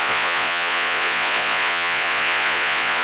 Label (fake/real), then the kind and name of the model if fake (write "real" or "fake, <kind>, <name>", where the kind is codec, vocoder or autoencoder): fake, vocoder, Vocos